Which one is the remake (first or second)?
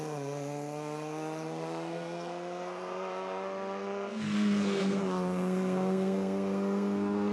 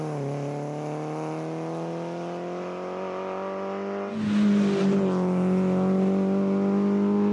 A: first